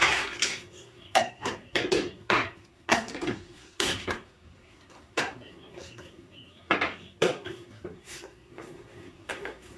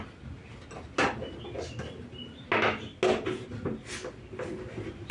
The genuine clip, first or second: second